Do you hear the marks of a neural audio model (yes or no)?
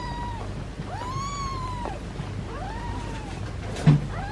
no